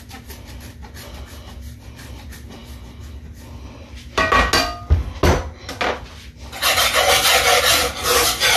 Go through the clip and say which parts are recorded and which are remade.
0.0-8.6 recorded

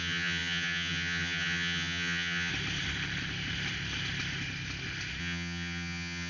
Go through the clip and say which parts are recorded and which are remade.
0.0-2.5 remade; 2.5-5.2 recorded; 5.2-6.3 remade